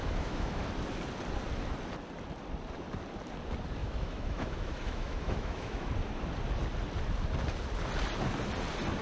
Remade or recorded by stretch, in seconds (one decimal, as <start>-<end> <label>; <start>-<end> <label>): 0.0-0.6 remade; 0.6-3.8 recorded; 3.8-5.9 remade; 5.9-9.0 recorded